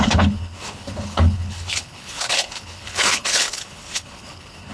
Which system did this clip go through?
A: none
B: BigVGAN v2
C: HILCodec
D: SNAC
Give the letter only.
C